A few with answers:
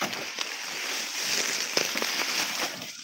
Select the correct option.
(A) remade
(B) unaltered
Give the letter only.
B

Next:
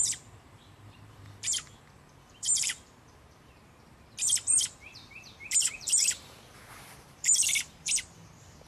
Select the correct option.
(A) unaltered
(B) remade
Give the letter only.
B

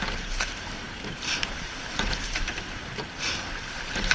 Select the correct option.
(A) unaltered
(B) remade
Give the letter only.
B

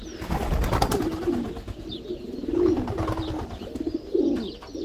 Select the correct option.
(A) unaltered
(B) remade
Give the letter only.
A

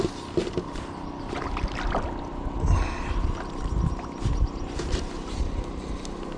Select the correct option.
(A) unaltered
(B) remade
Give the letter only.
A